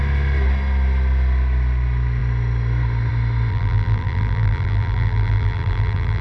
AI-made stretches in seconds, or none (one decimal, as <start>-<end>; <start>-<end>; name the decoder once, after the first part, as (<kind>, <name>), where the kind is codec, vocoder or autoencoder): 3.5-6.2 (vocoder, BigVGAN v2)